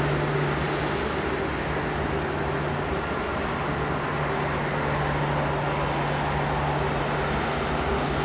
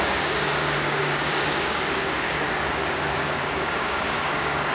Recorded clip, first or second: first